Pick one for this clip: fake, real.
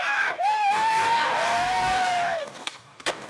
fake